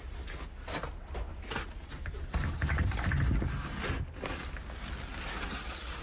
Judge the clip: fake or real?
real